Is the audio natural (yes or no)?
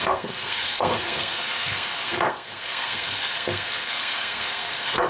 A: no